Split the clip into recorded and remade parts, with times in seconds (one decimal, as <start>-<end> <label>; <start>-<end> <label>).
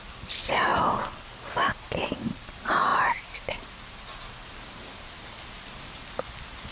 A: 0.0-6.7 recorded